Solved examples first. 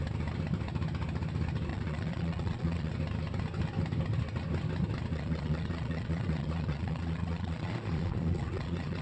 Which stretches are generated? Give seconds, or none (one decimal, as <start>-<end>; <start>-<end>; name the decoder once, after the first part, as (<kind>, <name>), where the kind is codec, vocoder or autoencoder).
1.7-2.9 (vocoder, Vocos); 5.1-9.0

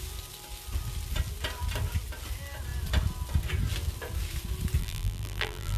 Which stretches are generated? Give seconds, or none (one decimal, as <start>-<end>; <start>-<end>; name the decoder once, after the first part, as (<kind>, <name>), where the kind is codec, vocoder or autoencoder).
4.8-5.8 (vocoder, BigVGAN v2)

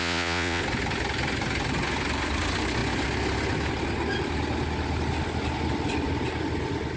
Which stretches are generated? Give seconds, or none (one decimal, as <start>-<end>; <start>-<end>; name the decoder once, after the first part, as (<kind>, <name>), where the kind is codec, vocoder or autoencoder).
0.0-0.6 (vocoder, Vocos)

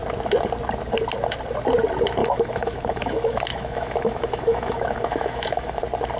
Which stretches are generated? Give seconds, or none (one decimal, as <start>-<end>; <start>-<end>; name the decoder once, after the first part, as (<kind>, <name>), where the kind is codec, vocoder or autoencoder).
2.2-5.8 (autoencoder, DAC-VAE)